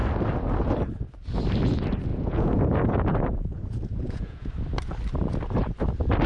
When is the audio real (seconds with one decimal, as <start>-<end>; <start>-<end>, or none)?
0.0-2.1; 4.5-6.3